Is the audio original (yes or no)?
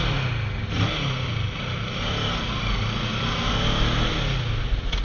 yes